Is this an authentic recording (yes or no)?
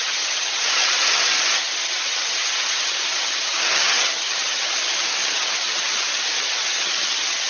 no